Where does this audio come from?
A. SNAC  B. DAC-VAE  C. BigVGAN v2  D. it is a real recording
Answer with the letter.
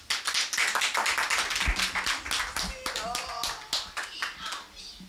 D